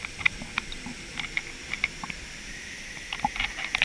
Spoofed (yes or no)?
no